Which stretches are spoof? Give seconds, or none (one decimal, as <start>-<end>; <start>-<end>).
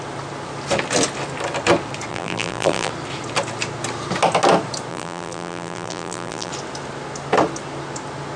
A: 2.1-2.9; 4.9-6.5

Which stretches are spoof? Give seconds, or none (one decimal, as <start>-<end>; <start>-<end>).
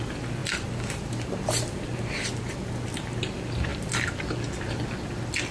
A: 3.7-4.7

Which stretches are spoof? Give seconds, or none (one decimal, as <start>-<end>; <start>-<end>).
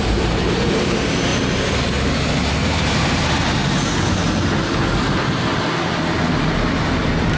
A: 0.0-1.3; 2.3-3.6; 5.1-5.5; 6.3-7.4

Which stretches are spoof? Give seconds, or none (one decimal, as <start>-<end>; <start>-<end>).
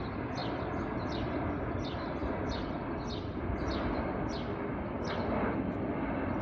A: none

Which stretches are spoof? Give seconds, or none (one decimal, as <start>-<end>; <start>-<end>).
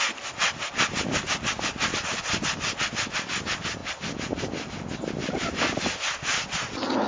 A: none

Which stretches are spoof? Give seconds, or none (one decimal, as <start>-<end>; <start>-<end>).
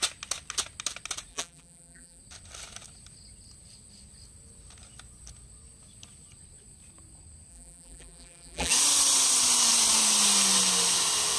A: 1.3-2.2; 7.5-8.7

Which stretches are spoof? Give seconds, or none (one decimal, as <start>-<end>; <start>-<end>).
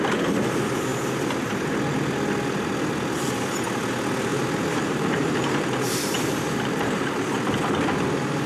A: 4.3-7.0